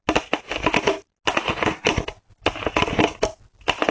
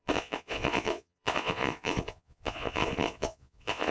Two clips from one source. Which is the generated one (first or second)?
second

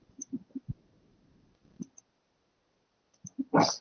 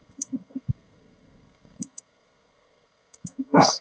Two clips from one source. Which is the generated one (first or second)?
second